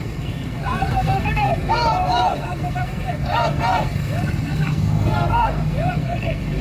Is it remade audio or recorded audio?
remade